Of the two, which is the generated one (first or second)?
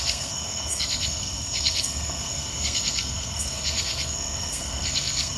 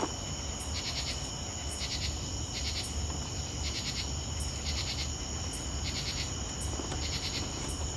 first